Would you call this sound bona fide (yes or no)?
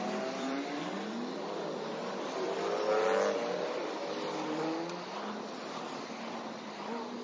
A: yes